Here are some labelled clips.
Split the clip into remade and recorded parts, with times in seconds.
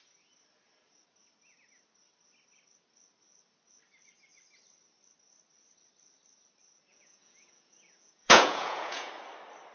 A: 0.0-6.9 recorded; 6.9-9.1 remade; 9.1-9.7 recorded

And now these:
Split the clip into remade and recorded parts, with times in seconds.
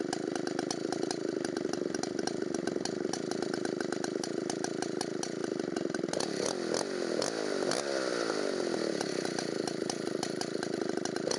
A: 0.0-11.4 recorded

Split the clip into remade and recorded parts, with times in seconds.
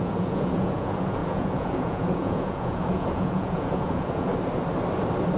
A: 0.0-4.3 remade; 4.3-5.4 recorded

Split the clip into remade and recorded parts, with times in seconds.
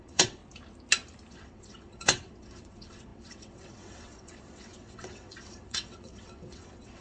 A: 0.0-0.4 remade; 0.4-1.3 recorded; 1.3-7.0 remade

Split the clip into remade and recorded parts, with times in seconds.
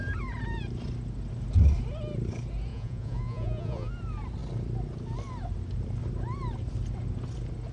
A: 0.0-2.7 recorded; 2.7-3.9 remade; 3.9-7.7 recorded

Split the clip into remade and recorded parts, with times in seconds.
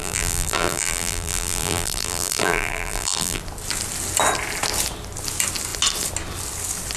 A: 0.0-3.4 remade; 3.4-7.0 recorded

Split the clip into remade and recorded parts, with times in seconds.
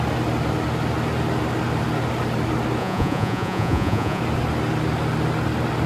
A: 0.0-2.8 recorded; 2.8-4.2 remade; 4.2-5.9 recorded